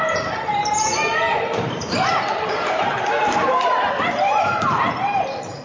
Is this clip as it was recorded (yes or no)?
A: no